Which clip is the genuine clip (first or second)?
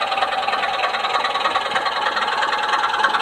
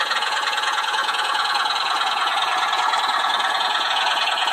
first